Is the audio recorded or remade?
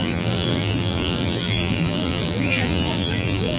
remade